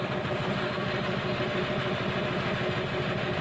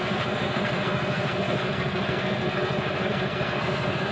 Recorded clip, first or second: first